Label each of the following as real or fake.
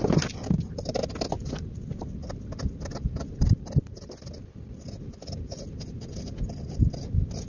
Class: real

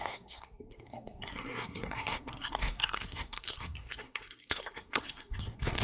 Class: fake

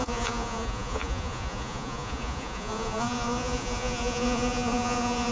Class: fake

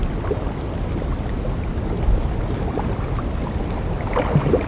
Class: real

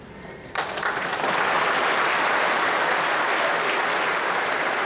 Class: real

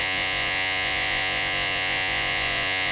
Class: fake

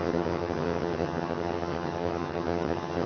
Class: fake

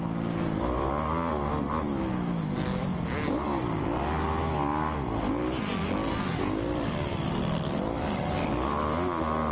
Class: real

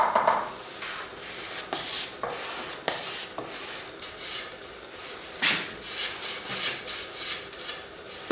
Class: real